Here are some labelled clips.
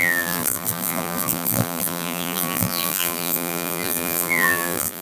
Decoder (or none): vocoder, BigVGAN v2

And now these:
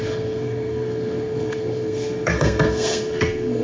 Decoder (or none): codec, SNAC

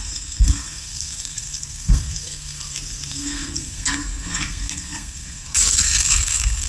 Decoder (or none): codec, SNAC